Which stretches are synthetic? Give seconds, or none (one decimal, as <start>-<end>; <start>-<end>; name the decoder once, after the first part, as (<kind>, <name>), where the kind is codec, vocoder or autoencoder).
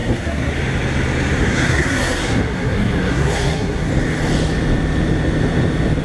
0.0-0.5 (codec, SNAC); 1.4-3.9